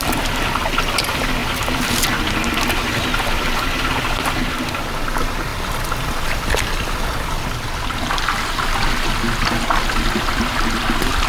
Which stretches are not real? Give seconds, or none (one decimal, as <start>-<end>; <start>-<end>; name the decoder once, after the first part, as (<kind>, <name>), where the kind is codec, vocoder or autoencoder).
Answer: none